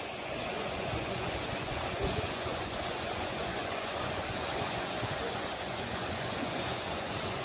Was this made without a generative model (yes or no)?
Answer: no